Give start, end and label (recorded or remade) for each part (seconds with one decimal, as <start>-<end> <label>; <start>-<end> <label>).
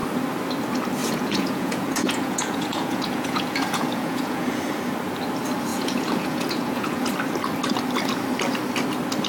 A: 0.0-1.0 recorded; 1.0-4.6 remade; 4.6-5.7 recorded; 5.7-7.1 remade; 7.1-9.3 recorded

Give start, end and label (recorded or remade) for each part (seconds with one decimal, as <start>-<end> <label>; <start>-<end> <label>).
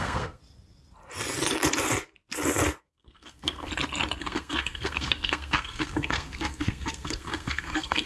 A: 0.0-0.4 remade; 0.4-2.8 recorded; 2.8-3.7 remade; 3.7-4.2 recorded; 4.2-8.1 remade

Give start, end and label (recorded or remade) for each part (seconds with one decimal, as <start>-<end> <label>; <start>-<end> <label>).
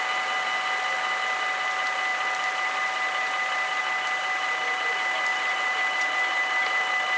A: 0.0-2.1 recorded; 2.1-3.8 remade; 3.8-5.3 recorded; 5.3-5.8 remade; 5.8-7.2 recorded